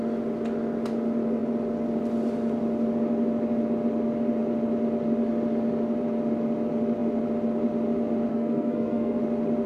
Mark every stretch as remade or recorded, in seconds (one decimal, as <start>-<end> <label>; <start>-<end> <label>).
0.0-8.3 recorded; 8.3-9.2 remade; 9.2-9.7 recorded

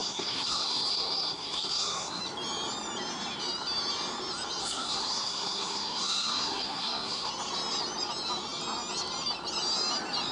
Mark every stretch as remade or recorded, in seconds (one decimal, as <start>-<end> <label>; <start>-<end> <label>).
0.0-2.2 remade; 2.2-4.6 recorded; 4.6-7.3 remade; 7.3-10.3 recorded